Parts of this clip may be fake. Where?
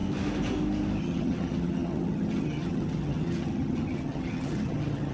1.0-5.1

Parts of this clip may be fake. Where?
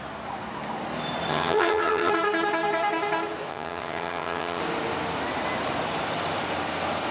1.3-2.1; 3.5-4.6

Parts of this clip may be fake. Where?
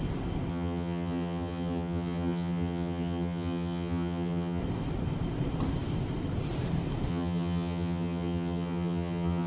0.5-4.6; 7.1-9.5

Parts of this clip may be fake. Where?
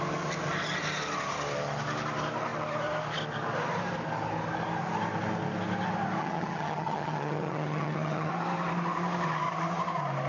6.2-8.3